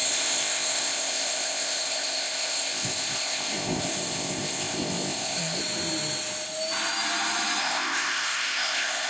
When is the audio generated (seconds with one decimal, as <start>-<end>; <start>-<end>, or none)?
0.0-5.6; 7.6-9.1